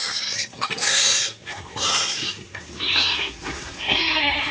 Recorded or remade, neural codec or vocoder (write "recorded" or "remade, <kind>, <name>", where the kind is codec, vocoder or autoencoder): remade, codec, SNAC